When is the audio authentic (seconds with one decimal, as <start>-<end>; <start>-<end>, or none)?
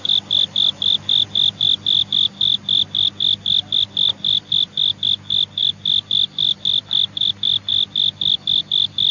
0.0-9.1